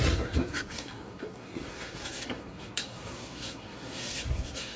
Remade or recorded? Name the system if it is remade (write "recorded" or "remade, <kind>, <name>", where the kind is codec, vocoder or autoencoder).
remade, codec, SNAC